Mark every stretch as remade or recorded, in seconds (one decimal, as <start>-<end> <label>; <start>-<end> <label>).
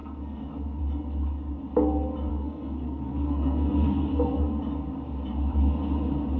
0.0-0.8 remade; 0.8-2.3 recorded; 2.3-4.5 remade; 4.5-6.4 recorded